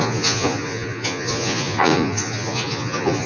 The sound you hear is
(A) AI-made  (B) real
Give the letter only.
A